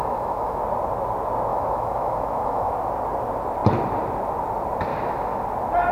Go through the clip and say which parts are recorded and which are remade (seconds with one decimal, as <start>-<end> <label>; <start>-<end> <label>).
0.0-0.6 remade; 0.6-1.5 recorded; 1.5-2.7 remade; 2.7-4.9 recorded; 4.9-5.4 remade; 5.4-5.9 recorded